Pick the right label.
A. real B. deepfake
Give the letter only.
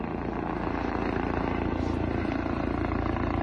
A